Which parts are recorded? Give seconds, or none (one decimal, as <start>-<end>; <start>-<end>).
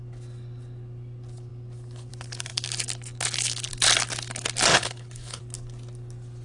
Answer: 0.0-4.7; 5.4-6.4